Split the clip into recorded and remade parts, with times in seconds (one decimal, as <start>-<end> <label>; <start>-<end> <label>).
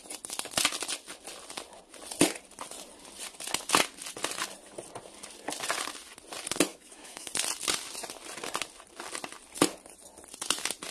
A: 0.0-6.7 recorded; 6.7-7.3 remade; 7.3-10.9 recorded